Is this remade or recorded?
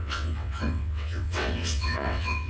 remade